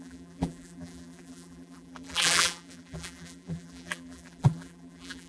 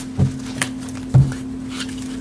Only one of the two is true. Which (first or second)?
second